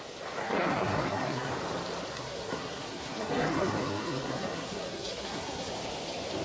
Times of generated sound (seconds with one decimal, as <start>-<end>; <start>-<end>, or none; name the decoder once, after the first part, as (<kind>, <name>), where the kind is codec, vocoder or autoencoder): 0.4-1.5 (codec, SNAC); 2.1-5.7